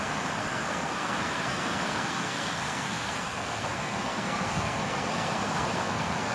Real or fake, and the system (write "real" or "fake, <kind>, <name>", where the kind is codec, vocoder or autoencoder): fake, codec, SNAC